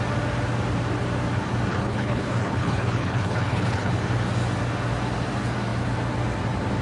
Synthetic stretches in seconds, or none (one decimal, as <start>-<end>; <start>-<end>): 1.7-3.9